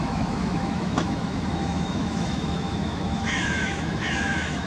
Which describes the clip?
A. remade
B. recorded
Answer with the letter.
A